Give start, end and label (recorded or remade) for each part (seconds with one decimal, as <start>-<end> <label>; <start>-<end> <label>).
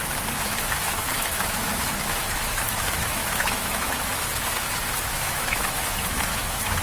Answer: 0.0-6.8 remade